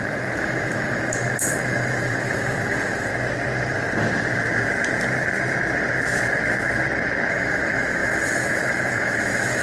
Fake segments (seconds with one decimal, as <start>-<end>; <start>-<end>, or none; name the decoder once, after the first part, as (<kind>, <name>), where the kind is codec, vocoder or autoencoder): 0.0-3.1 (autoencoder, DAC-VAE); 7.3-9.6